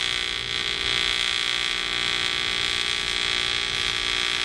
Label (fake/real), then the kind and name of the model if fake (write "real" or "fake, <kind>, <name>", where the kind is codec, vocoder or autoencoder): real